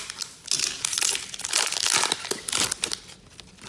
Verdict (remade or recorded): recorded